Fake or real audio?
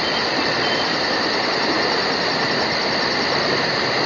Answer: real